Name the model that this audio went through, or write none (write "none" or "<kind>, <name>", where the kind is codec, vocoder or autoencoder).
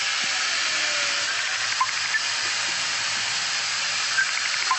none